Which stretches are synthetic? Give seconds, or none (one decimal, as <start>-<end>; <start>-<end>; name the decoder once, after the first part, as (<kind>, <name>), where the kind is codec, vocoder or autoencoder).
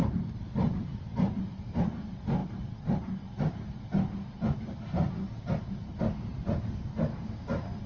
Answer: none